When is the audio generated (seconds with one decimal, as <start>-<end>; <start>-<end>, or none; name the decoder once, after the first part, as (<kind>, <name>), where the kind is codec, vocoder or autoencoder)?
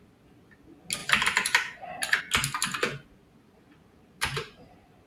1.0-2.2 (vocoder, BigVGAN v2); 3.2-5.1